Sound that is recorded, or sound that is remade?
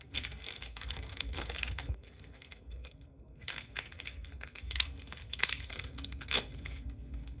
remade